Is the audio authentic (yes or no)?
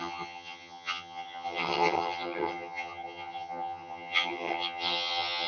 no